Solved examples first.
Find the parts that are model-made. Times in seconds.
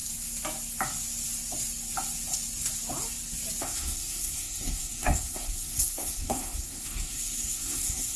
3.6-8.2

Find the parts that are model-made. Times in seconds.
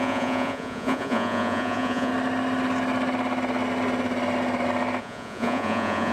0.0-2.1; 5.0-6.1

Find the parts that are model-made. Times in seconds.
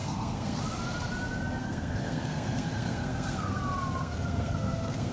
0.0-0.6; 1.6-3.6; 4.0-5.1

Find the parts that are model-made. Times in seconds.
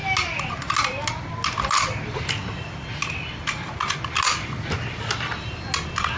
none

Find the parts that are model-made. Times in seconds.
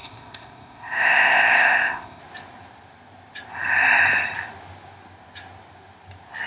0.0-2.2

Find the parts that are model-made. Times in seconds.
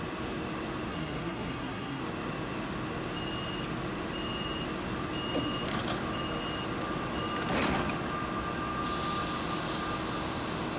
0.9-2.0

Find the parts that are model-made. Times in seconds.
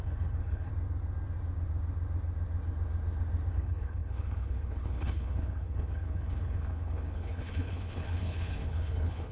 0.0-0.7; 3.5-9.3